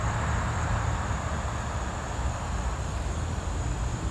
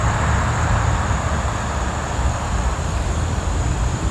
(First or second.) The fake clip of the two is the second